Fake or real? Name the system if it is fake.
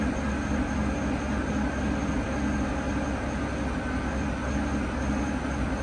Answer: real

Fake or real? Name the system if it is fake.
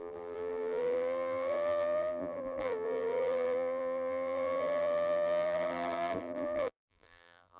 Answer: fake, vocoder, BigVGAN v2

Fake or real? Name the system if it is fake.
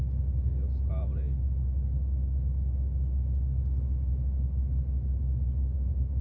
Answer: real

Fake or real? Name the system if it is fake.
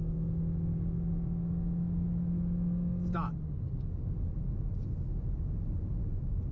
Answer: real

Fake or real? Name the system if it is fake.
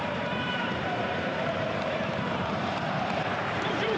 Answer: fake, vocoder, BigVGAN v2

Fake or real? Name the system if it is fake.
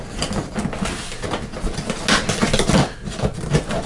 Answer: real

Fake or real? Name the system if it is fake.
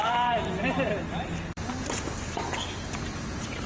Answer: fake, vocoder, BigVGAN v2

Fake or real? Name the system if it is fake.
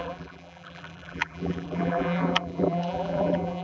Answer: fake, vocoder, BigVGAN v2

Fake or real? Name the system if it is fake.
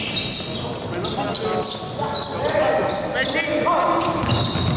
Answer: real